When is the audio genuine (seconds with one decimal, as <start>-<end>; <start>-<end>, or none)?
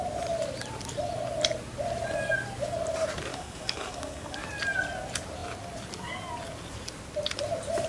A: 0.0-3.3; 4.5-7.9